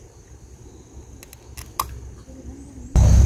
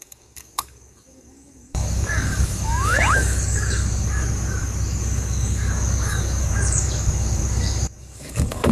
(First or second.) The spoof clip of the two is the second